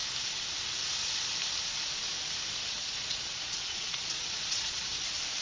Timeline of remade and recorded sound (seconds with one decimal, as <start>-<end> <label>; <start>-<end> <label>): 0.0-2.7 recorded; 2.7-4.8 remade; 4.8-5.4 recorded